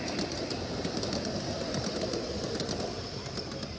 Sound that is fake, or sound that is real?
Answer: real